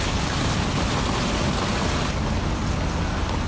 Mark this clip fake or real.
real